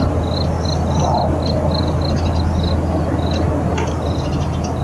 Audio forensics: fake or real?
real